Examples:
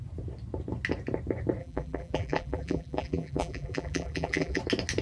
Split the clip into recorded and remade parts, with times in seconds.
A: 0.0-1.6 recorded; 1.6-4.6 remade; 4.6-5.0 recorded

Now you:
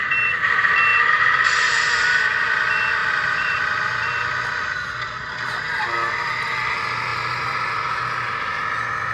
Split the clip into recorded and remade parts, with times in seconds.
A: 0.0-3.0 recorded; 3.0-4.7 remade; 4.7-7.1 recorded; 7.1-8.0 remade; 8.0-9.1 recorded

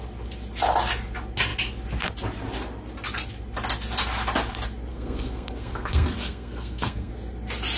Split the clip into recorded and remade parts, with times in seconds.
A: 0.0-4.9 recorded; 4.9-7.1 remade; 7.1-7.8 recorded

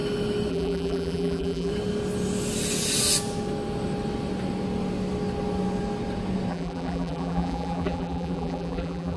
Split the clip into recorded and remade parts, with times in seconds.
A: 0.0-0.5 recorded; 0.5-1.7 remade; 1.7-6.5 recorded; 6.5-9.2 remade